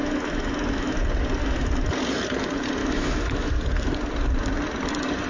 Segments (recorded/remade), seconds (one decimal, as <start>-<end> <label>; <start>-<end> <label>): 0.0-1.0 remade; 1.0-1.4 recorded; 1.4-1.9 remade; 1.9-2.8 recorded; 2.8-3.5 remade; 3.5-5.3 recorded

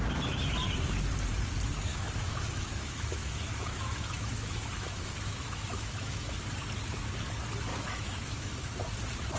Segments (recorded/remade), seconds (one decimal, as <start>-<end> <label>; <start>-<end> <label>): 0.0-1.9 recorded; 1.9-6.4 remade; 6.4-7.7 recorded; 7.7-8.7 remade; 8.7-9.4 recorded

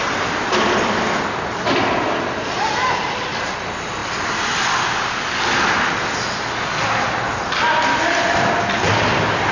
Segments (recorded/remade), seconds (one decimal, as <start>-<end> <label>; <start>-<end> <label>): 0.0-9.5 recorded

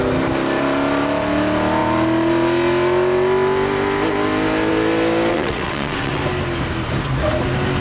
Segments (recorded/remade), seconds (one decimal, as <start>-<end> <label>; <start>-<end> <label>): 0.0-5.3 recorded; 5.3-6.2 remade; 6.2-7.8 recorded

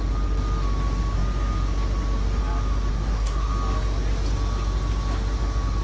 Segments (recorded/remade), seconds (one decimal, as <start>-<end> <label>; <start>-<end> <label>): 0.0-2.9 recorded; 2.9-3.5 remade; 3.5-5.8 recorded

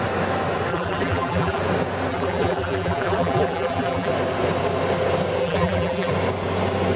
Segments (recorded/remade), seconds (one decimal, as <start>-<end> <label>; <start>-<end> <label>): 0.0-0.7 recorded; 0.7-1.6 remade; 1.6-2.1 recorded; 2.1-4.1 remade; 4.1-5.4 recorded; 5.4-6.1 remade; 6.1-7.0 recorded